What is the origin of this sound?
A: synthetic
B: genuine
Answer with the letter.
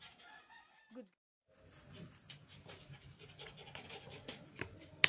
B